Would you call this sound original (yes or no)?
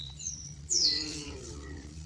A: no